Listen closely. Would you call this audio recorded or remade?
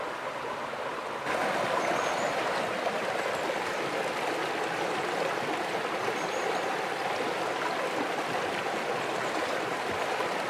recorded